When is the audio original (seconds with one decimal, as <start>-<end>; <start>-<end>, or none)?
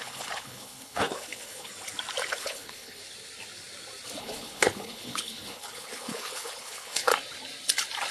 1.7-2.3; 3.0-4.2; 7.1-8.1